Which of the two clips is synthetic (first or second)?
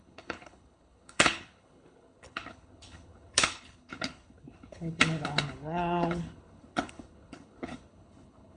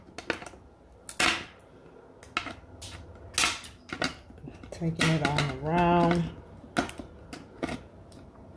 first